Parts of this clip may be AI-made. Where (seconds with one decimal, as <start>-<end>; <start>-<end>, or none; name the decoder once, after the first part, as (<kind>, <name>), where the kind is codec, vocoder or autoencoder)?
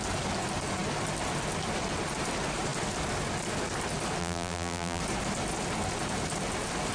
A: 4.2-5.0 (vocoder, BigVGAN v2)